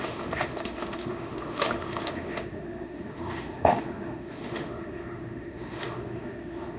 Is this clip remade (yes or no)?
yes